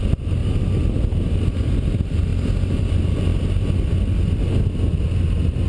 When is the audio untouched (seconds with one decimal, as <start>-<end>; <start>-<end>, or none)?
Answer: 0.4-1.2; 2.3-2.8; 3.3-5.7